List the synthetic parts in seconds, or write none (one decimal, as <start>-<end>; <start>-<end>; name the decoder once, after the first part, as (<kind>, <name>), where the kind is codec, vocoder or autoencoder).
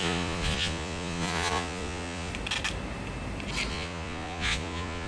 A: 0.0-2.3 (vocoder, Vocos); 3.7-5.1